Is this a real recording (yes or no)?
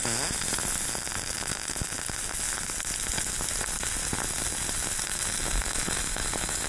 yes